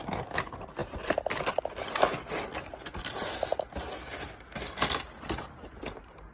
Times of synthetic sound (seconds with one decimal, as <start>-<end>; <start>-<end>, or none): none

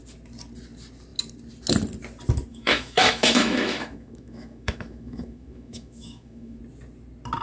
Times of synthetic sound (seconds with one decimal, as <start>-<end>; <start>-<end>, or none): 2.5-6.6